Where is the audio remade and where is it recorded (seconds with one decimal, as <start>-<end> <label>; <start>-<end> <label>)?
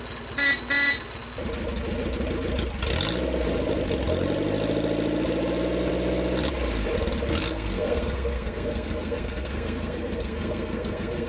0.0-7.3 recorded; 7.3-11.3 remade